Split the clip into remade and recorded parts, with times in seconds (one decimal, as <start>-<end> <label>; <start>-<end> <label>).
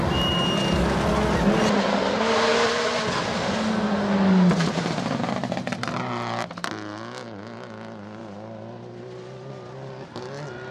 0.0-10.7 recorded